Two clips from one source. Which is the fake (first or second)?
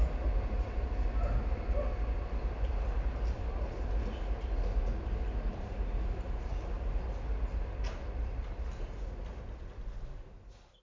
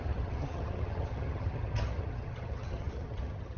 second